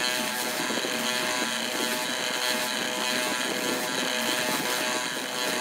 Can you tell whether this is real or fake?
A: real